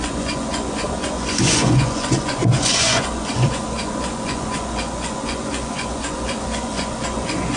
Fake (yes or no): yes